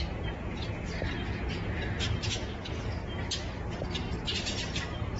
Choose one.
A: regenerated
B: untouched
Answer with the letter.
B